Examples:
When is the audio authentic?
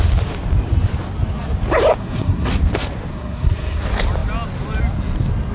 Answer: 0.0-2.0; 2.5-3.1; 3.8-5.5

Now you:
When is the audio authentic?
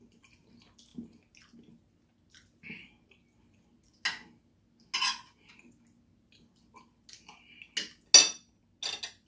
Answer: 0.0-9.3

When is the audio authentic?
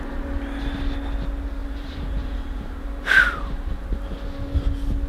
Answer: 0.0-1.6; 4.1-5.1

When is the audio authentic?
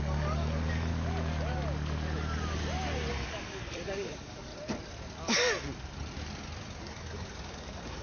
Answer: 0.9-3.1; 4.5-6.8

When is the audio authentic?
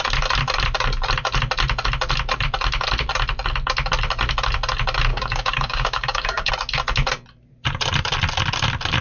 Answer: 0.0-5.1; 6.5-9.0